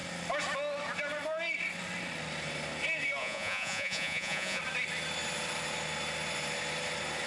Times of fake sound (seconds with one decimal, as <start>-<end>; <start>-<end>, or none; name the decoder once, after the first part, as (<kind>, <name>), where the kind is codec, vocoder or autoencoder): 3.2-4.6 (vocoder, Vocos)